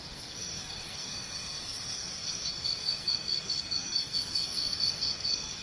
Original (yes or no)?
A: no